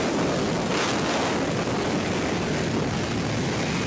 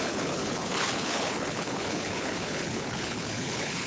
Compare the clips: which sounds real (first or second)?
first